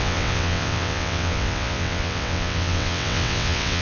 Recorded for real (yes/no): no